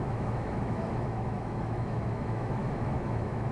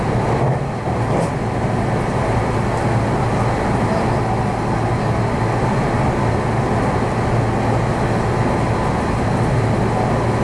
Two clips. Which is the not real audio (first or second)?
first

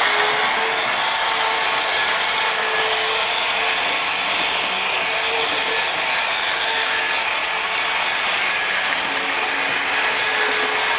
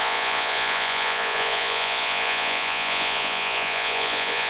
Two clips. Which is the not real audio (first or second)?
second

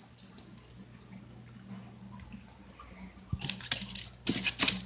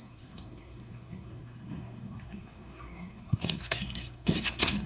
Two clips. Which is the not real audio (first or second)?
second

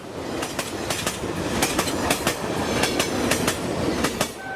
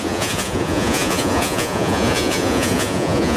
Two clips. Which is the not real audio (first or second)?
second